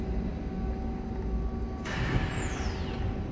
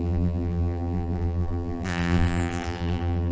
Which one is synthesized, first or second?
second